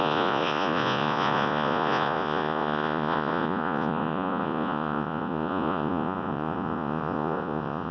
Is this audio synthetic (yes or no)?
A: yes